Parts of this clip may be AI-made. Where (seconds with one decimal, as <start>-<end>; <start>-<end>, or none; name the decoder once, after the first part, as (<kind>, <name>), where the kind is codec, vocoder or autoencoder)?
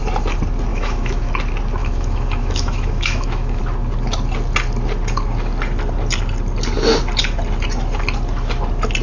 0.7-1.3 (autoencoder, DAC-VAE); 1.8-3.6